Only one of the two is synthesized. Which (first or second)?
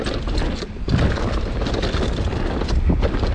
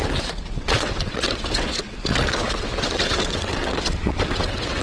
second